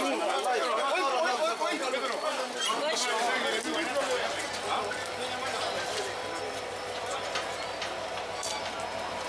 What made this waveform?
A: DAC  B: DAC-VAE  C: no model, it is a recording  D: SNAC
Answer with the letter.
C